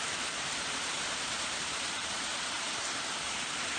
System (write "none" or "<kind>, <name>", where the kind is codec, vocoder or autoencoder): vocoder, BigVGAN v2